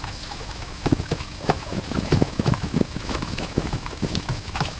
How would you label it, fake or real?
fake